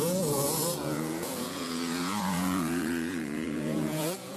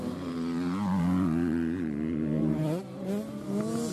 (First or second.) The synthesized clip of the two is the first